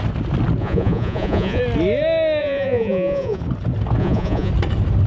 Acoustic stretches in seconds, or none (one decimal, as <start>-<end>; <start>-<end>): 0.0-0.6; 1.6-2.4; 3.4-4.0; 4.5-5.1